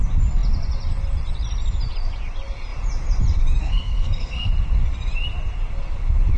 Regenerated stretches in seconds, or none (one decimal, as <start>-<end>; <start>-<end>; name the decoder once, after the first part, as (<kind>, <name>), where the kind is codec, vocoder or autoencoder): 3.6-4.5 (codec, SNAC)